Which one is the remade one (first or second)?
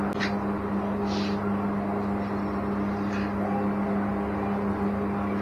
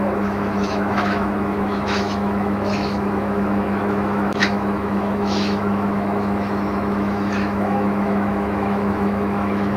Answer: second